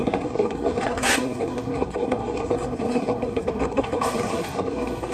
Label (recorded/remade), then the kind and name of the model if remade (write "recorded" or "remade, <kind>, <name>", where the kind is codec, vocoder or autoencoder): remade, codec, SNAC